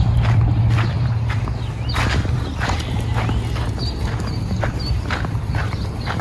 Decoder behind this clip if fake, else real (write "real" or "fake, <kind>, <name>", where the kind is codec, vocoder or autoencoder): real